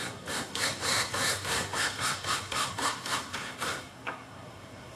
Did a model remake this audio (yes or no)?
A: yes